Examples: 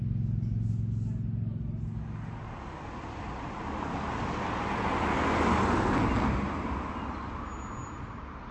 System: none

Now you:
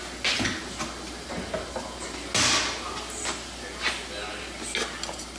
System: none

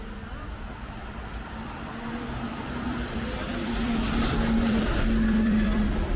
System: vocoder, BigVGAN v2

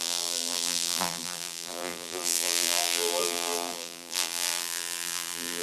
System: vocoder, BigVGAN v2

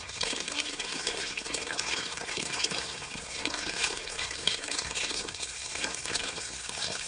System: codec, SNAC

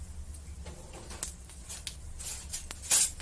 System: none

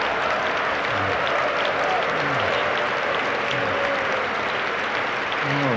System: none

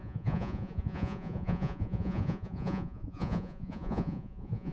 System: vocoder, Vocos